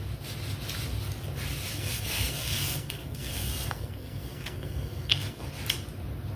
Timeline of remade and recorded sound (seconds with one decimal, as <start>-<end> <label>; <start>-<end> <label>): 0.0-1.7 recorded; 1.7-5.5 remade; 5.5-6.4 recorded